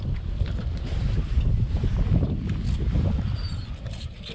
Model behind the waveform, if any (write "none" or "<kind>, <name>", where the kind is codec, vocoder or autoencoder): none